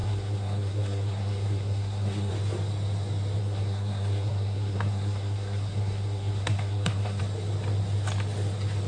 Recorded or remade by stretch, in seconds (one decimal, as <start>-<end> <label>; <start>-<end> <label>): 0.0-2.3 remade; 2.3-3.4 recorded; 3.4-7.2 remade; 7.2-8.9 recorded